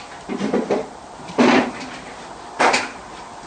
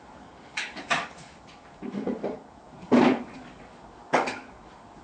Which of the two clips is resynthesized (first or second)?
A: second